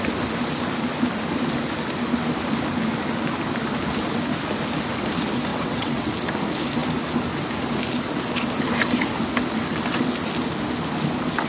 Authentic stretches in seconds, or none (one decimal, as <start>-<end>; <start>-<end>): 0.0-5.5; 6.1-11.5